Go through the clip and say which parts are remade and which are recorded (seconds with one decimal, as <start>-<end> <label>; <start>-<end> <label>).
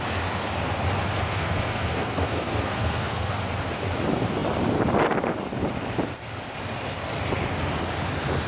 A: 0.0-1.1 recorded; 1.1-3.3 remade; 3.3-8.5 recorded